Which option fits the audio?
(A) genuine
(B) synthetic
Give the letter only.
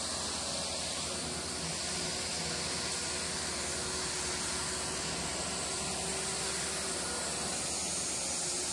A